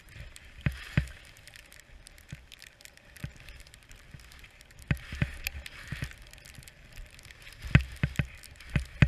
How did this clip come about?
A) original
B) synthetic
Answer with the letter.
A